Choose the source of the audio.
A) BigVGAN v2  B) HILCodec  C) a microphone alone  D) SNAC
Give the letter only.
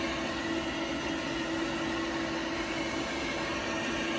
C